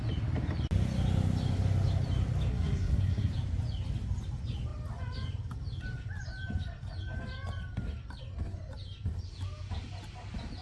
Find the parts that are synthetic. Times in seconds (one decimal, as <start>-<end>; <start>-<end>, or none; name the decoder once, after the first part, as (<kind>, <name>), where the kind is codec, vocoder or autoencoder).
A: 2.5-3.3 (codec, SNAC)